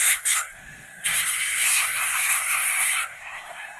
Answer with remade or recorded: remade